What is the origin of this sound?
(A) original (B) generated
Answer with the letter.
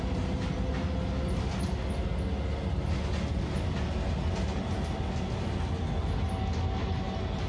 A